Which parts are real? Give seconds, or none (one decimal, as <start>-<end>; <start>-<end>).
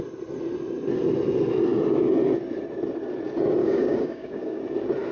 0.0-3.6; 4.6-5.1